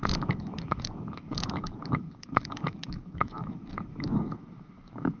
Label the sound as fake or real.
fake